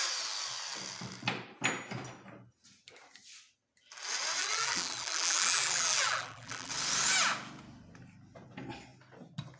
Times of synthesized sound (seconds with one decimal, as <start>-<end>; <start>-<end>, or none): 4.4-6.7